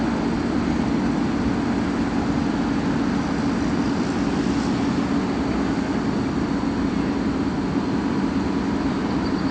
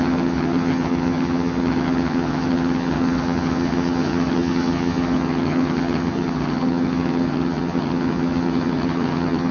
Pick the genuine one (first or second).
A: first